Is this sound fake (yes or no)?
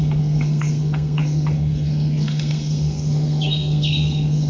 yes